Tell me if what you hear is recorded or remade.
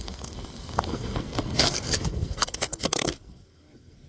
remade